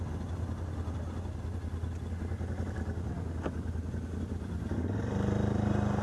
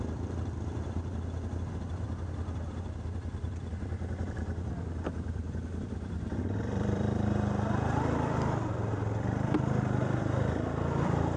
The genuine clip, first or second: first